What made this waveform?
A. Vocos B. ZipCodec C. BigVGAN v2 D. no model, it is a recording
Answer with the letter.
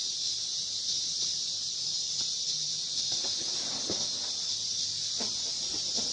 D